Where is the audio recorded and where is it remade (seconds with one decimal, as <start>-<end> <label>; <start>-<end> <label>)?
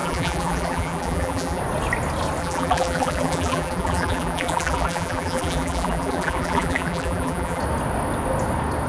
0.0-1.6 remade; 1.6-2.4 recorded; 2.4-7.6 remade; 7.6-8.9 recorded